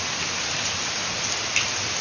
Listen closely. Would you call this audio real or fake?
real